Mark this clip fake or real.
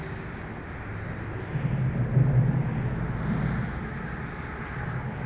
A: real